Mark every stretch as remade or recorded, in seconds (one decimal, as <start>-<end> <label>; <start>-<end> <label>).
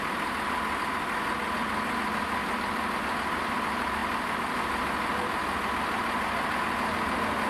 0.0-2.4 recorded; 2.4-3.0 remade; 3.0-7.5 recorded